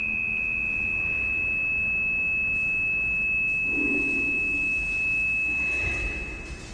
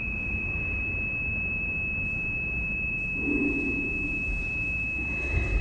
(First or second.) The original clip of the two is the first